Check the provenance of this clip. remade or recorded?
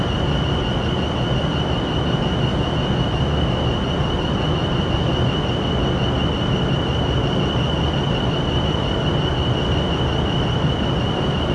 recorded